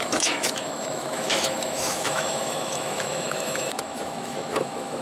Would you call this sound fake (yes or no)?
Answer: yes